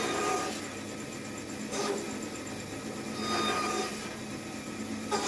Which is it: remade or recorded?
recorded